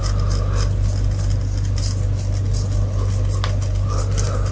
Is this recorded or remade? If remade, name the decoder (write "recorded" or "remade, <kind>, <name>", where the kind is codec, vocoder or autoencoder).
recorded